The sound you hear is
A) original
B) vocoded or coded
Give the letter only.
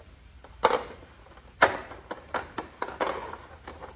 B